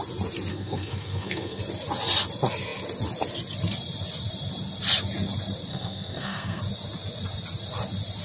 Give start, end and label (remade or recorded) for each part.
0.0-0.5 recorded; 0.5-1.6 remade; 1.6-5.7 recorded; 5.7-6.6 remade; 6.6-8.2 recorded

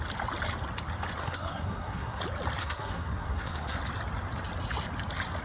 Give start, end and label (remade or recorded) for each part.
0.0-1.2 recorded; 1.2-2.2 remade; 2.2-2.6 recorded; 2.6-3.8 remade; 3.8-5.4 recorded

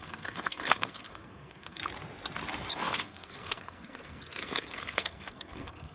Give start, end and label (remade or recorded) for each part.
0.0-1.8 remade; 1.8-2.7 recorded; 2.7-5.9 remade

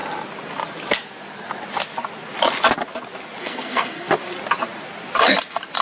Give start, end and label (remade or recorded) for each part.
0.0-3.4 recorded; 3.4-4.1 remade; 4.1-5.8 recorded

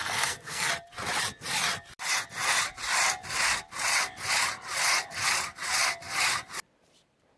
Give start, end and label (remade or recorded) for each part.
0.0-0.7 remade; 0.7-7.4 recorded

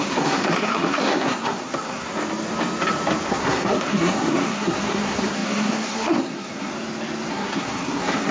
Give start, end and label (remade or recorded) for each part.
0.0-2.1 remade; 2.1-3.3 recorded; 3.3-6.7 remade; 6.7-7.3 recorded; 7.3-8.3 remade

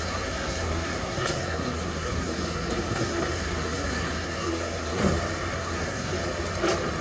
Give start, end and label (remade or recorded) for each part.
0.0-5.0 remade; 5.0-5.5 recorded; 5.5-6.2 remade; 6.2-7.0 recorded